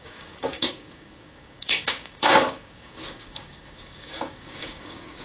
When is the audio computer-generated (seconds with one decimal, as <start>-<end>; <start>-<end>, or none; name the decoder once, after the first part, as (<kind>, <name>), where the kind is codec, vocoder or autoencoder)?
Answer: 0.0-5.2 (codec, DAC)